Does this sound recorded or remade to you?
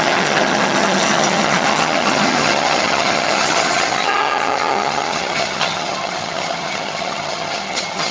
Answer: remade